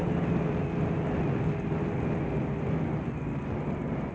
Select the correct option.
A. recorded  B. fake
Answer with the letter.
A